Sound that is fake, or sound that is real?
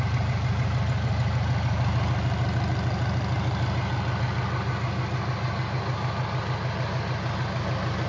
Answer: real